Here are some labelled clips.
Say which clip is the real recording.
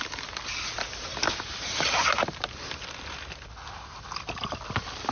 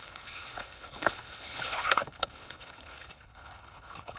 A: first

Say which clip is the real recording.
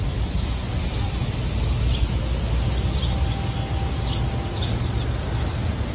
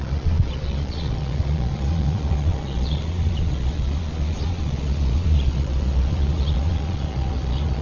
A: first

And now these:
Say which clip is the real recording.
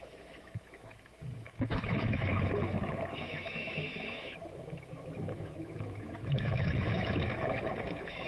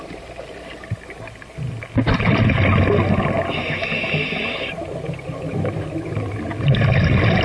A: second